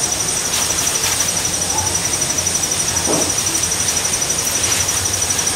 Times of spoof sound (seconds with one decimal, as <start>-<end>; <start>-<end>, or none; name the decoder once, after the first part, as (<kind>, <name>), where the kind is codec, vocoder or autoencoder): none